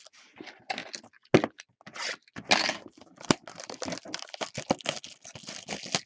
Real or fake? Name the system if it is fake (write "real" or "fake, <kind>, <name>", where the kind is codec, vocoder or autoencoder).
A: real